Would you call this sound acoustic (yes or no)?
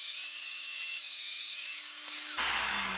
no